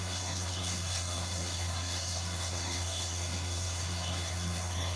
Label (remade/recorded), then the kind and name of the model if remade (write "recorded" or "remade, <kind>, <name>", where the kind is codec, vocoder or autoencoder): remade, codec, SNAC